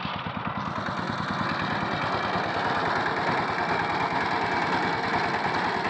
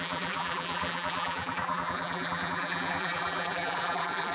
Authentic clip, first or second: first